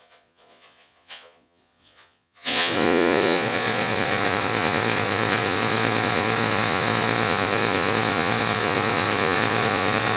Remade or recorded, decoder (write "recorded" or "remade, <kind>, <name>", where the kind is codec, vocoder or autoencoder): remade, vocoder, Vocos